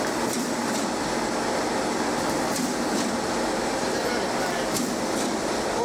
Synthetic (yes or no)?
no